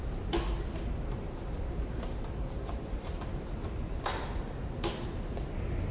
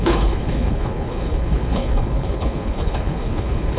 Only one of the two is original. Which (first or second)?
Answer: first